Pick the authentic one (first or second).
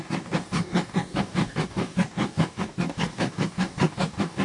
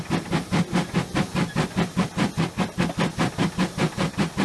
second